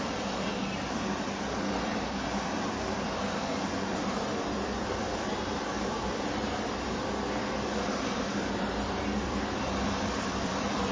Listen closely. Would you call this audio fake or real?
fake